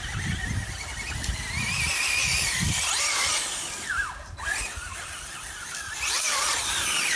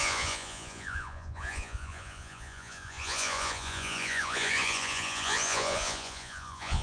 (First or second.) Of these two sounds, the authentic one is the first